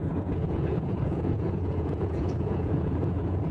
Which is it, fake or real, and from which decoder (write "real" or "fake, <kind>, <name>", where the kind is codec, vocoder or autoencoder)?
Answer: fake, vocoder, Vocos